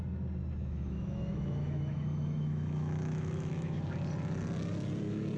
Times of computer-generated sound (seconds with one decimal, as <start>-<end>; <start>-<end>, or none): 0.6-3.8